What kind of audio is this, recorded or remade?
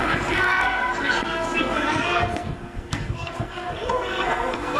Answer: remade